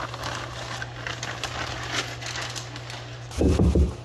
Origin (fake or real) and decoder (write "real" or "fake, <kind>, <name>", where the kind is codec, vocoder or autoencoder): real